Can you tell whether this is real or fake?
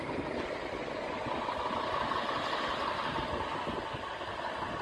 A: real